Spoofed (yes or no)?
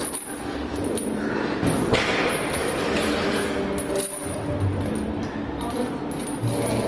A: no